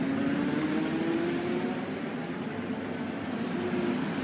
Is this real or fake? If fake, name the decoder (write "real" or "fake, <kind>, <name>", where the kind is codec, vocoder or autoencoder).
real